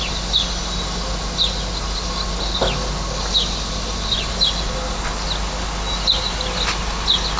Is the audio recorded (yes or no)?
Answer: yes